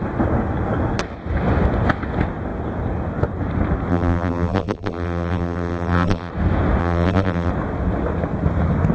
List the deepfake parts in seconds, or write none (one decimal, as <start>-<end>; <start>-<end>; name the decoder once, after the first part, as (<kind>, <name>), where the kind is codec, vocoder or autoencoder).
3.9-6.3 (vocoder, BigVGAN v2); 6.8-7.5